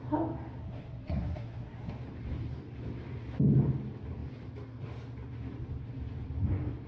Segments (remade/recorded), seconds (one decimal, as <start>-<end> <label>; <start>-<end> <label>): 0.0-0.6 recorded; 0.6-1.9 remade; 1.9-6.9 recorded